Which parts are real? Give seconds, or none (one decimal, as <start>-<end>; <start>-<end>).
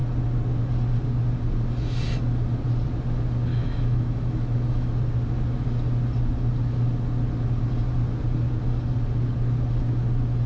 0.0-3.5; 4.9-10.5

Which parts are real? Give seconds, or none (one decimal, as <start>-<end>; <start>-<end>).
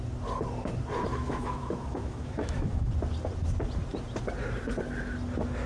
0.0-1.1; 2.9-5.7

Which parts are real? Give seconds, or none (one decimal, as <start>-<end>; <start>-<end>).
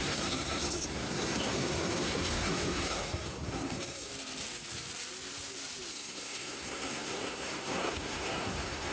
4.1-5.9